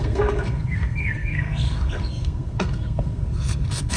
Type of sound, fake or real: fake